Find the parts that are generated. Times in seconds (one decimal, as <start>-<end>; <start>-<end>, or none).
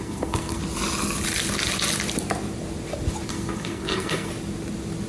0.0-0.6; 3.3-4.3